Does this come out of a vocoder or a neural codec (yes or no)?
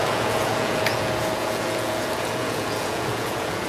yes